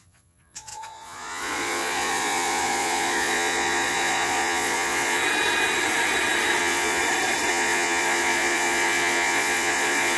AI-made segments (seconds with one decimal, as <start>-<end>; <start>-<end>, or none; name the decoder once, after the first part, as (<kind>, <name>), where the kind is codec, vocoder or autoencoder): 0.0-5.2 (vocoder, Vocos); 6.6-7.0; 7.5-10.2